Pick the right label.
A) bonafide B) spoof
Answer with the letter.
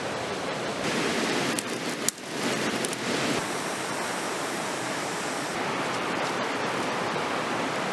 B